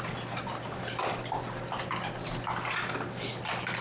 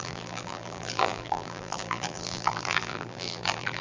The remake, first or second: second